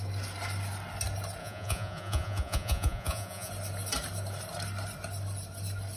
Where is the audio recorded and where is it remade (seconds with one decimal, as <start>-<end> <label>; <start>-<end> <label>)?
0.0-1.4 recorded; 1.4-3.5 remade; 3.5-6.0 recorded